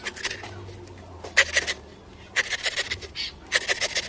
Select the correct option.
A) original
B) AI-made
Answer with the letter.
A